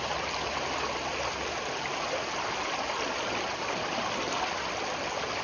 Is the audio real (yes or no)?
yes